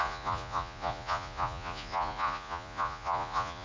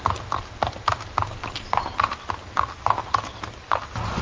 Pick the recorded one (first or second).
second